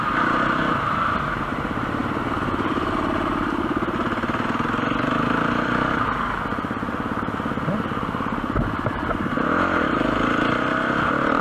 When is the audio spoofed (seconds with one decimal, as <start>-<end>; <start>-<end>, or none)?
none